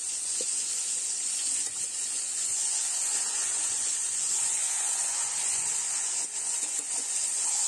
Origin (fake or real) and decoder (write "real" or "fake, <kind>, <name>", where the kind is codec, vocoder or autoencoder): fake, vocoder, Vocos